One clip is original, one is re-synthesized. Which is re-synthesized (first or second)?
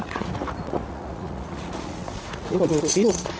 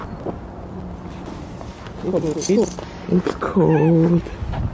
first